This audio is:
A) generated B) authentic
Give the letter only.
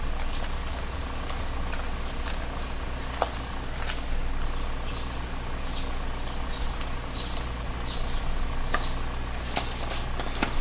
B